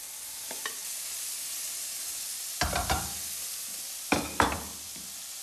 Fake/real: real